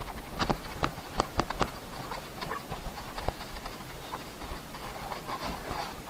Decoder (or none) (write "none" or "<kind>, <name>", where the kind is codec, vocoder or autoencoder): none